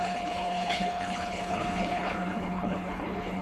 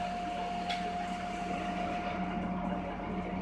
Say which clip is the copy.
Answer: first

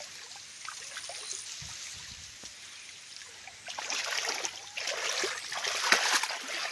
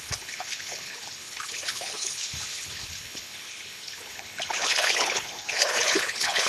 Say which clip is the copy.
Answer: second